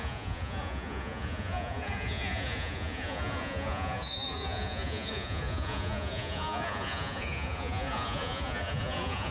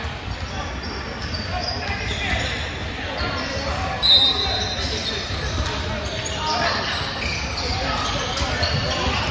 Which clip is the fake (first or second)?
first